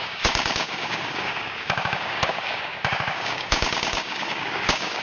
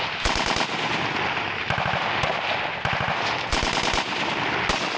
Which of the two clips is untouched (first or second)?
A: second